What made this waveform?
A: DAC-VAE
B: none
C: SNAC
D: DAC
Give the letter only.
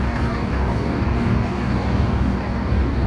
D